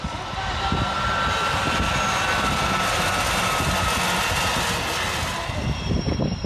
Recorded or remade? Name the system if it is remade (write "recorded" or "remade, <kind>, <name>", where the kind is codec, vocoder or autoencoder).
recorded